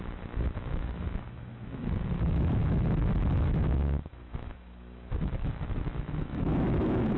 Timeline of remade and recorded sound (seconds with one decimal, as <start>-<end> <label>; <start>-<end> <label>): 0.0-7.2 remade

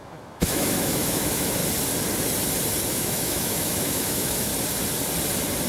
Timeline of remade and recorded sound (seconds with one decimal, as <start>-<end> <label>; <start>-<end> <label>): 0.0-1.6 remade; 1.6-2.9 recorded; 2.9-4.5 remade; 4.5-5.7 recorded

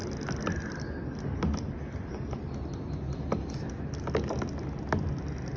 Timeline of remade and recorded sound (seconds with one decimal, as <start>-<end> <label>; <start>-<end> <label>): 0.0-5.6 recorded

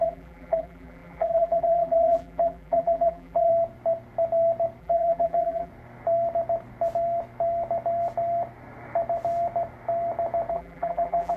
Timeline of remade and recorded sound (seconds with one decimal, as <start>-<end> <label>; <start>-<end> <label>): 0.0-3.5 remade; 3.5-4.8 recorded; 4.8-5.7 remade; 5.7-10.5 recorded; 10.5-11.4 remade

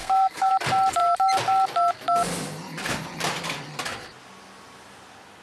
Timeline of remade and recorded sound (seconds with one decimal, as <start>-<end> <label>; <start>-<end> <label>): 0.0-0.5 remade; 0.5-5.4 recorded